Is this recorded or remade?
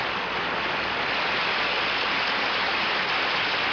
recorded